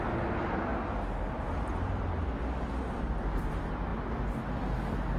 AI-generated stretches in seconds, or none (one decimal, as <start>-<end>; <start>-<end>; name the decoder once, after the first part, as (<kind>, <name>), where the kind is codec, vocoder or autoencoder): none